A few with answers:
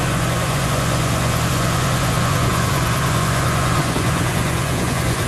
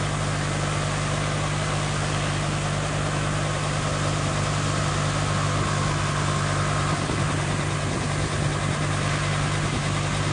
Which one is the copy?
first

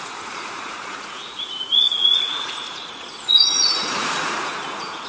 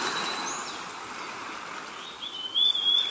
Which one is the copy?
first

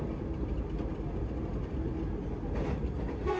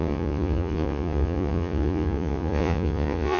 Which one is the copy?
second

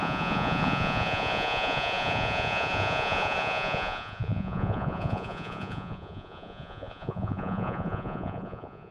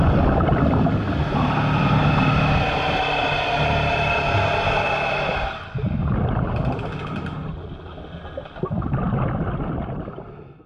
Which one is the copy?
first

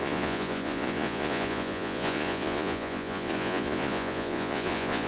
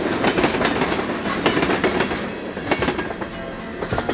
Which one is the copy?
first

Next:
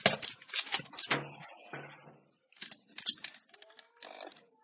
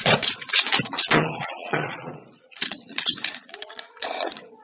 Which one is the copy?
second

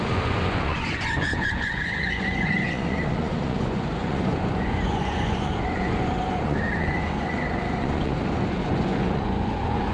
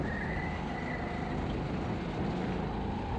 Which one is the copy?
first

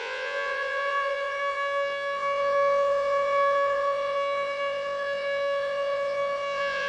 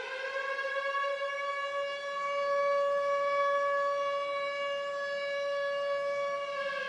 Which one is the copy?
first